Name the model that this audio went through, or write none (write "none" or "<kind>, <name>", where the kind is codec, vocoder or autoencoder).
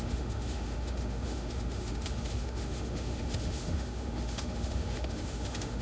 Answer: autoencoder, DAC-VAE